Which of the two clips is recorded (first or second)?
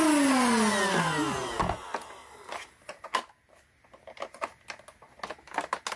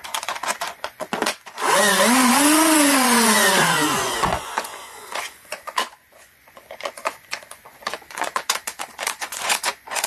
first